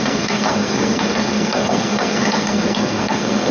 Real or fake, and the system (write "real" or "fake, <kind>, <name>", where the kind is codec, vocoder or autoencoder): fake, codec, SNAC